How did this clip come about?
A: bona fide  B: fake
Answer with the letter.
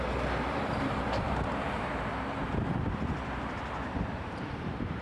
B